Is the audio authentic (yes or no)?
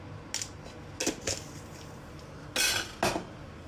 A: yes